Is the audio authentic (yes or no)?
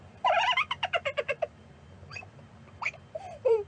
no